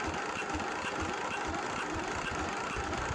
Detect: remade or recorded remade